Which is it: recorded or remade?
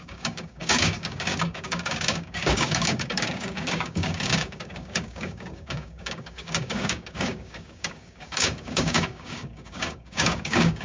remade